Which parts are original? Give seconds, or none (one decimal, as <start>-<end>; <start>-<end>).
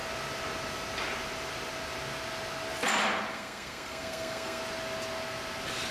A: 0.0-3.3; 4.6-5.9